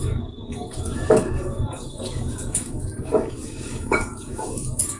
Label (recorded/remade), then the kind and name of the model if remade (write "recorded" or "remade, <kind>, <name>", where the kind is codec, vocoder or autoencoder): remade, codec, DAC